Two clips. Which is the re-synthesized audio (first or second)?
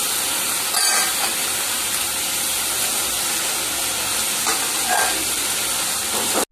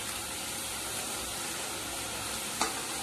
second